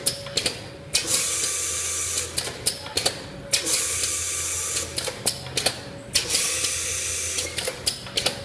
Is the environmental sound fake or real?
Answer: real